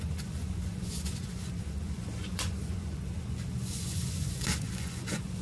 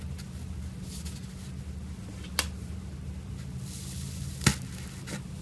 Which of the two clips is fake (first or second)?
first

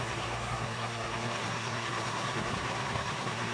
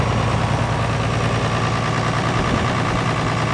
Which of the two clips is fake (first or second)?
first